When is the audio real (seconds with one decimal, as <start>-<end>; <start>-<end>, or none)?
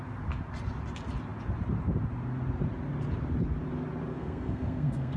0.0-4.1